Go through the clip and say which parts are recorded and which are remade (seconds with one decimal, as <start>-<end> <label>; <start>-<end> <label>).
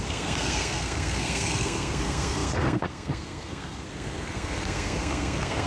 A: 0.0-5.7 remade